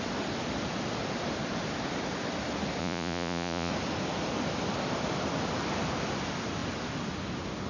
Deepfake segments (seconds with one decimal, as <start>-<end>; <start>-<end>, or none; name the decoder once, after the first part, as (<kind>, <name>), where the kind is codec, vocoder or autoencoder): 2.8-3.7 (vocoder, Vocos)